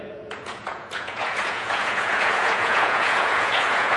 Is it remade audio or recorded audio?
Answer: remade